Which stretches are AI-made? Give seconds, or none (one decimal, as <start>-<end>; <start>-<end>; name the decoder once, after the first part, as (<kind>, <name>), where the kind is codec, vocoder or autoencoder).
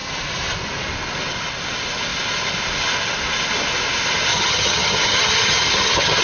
4.3-6.2 (vocoder, HiFi-GAN)